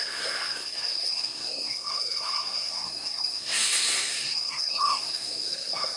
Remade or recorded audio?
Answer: remade